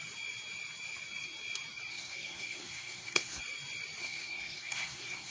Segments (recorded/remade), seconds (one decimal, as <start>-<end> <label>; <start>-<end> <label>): 0.0-1.9 recorded; 1.9-3.4 remade; 3.4-4.0 recorded; 4.0-5.3 remade